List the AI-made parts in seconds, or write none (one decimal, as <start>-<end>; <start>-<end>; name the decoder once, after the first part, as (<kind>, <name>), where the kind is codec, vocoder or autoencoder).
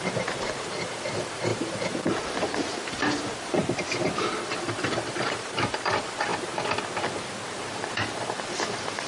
0.0-3.6 (vocoder, BigVGAN v2); 4.3-6.3; 7.5-9.1